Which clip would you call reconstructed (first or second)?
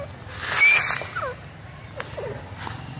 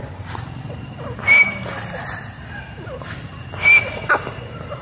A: second